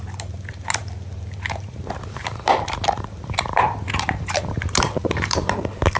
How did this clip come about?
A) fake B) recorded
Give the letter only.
A